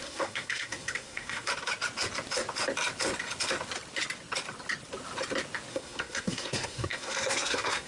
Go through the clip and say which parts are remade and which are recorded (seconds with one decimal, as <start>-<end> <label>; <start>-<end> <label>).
0.0-1.5 remade; 1.5-5.7 recorded; 5.7-7.9 remade